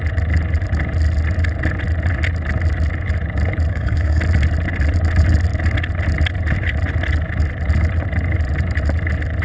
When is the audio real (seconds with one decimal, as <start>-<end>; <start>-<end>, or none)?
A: 0.0-3.7; 4.2-9.4